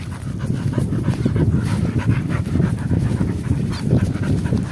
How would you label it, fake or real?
real